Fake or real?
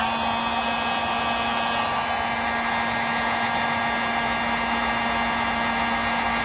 real